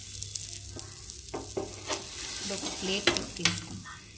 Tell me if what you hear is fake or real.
real